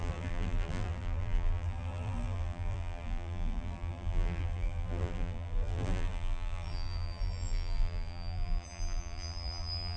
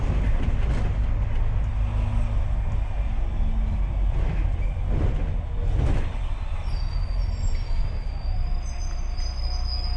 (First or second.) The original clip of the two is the second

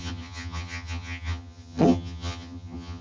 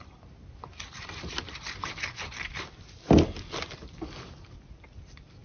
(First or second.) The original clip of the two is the second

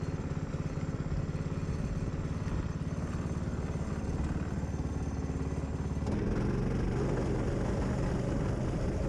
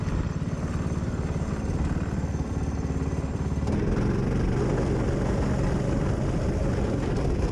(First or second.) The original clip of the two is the first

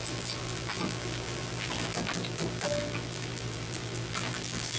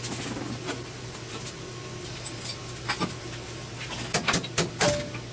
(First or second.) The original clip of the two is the second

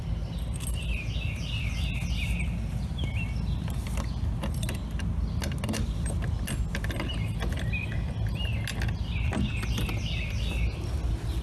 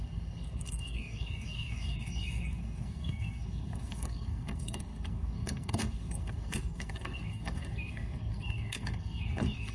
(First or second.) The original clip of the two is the first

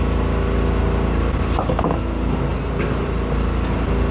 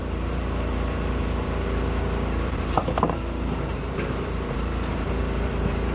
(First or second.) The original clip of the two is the first